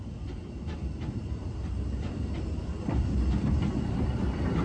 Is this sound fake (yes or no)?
no